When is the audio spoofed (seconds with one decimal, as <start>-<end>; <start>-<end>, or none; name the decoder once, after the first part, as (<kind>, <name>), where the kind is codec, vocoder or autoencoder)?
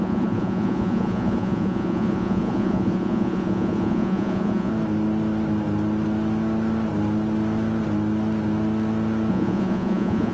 0.0-4.7 (vocoder, Vocos); 9.3-10.3